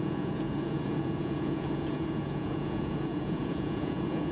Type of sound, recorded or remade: remade